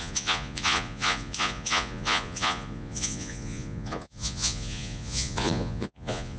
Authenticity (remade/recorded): remade